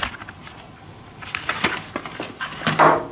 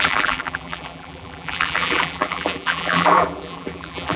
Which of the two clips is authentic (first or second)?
first